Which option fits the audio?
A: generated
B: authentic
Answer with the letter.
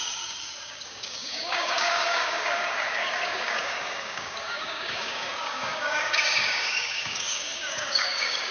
A